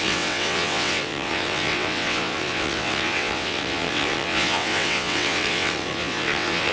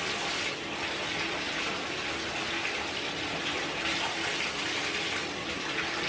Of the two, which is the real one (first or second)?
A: second